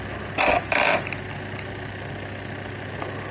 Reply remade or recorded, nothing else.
recorded